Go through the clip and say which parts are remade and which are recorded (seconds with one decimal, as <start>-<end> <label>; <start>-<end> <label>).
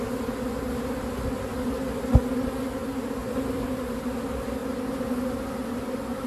0.0-3.2 recorded; 3.2-3.9 remade; 3.9-6.3 recorded